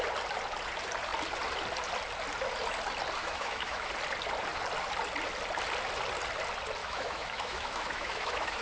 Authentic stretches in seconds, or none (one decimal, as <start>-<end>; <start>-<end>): 0.0-3.2; 3.9-6.8